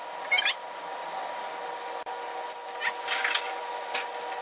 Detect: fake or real real